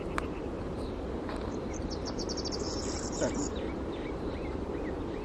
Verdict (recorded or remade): remade